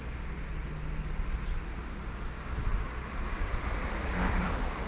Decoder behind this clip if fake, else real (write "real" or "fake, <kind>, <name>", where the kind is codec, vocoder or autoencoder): real